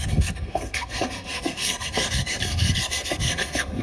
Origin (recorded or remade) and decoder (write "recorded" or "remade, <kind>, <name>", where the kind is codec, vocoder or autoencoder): remade, codec, SNAC